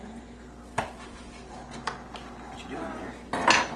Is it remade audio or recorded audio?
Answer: recorded